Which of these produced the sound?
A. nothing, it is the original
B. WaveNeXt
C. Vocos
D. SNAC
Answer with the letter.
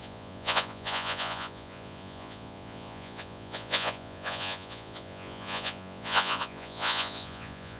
C